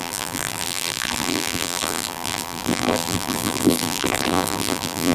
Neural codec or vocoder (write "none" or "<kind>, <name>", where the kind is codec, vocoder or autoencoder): vocoder, BigVGAN v2